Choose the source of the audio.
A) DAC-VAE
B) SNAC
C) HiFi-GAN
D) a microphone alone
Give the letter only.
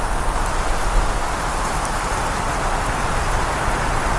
D